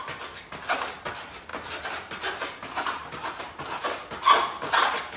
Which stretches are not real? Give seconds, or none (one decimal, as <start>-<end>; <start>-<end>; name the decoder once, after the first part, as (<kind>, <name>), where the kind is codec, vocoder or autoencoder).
none